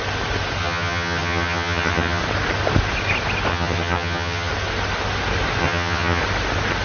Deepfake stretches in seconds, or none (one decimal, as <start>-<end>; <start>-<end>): 0.6-2.2; 3.5-4.5; 5.6-6.2